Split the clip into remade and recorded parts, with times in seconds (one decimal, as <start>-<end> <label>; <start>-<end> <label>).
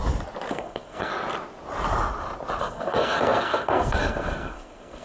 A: 0.0-0.5 recorded; 0.5-1.1 remade; 1.1-2.6 recorded; 2.6-5.0 remade